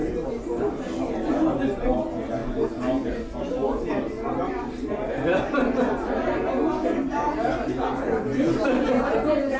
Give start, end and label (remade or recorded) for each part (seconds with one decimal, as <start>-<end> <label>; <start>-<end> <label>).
0.0-9.6 recorded